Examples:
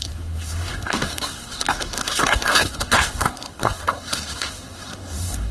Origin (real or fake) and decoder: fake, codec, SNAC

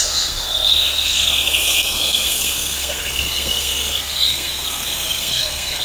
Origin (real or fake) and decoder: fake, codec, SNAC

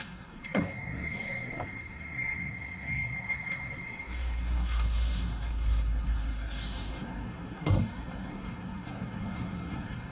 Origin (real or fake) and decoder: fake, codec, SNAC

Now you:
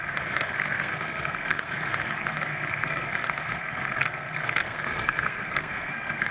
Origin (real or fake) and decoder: fake, codec, SNAC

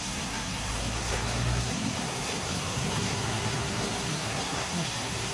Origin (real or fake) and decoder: fake, codec, SNAC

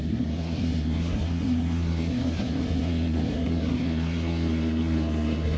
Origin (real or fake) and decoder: fake, codec, SNAC